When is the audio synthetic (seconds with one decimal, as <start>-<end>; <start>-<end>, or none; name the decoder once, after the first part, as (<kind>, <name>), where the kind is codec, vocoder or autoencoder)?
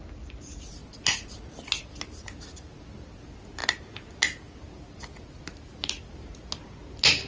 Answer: none